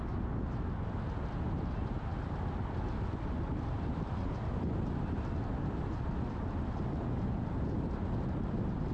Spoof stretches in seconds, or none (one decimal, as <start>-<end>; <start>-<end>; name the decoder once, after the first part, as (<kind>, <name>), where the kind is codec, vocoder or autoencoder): none